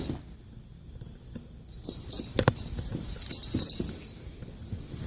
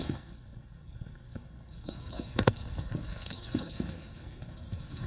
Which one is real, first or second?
first